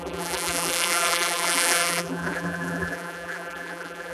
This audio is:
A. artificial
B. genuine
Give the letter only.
A